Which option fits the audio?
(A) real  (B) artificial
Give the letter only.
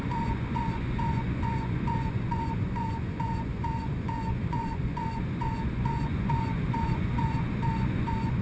B